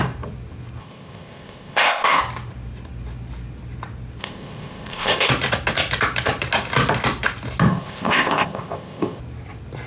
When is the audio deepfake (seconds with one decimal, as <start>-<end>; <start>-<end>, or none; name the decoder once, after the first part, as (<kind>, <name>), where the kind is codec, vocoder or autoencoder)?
0.8-2.2 (codec, ZipCodec); 4.2-5.3; 7.7-9.2